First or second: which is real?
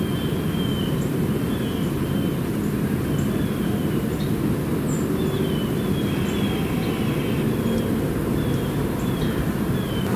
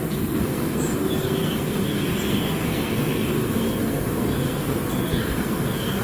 first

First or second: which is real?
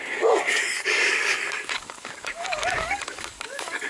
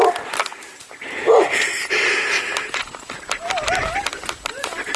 second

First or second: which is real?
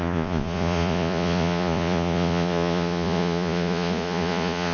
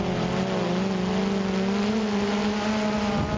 second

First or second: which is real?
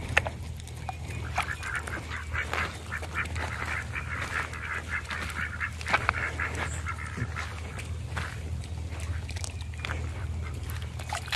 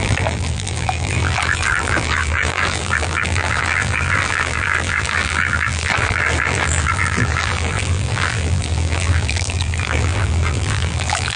first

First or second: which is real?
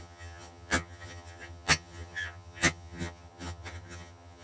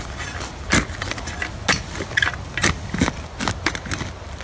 second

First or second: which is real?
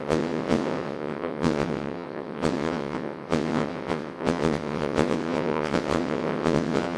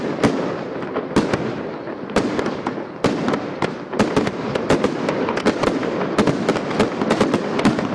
second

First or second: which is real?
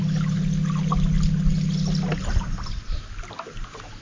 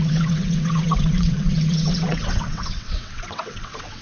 first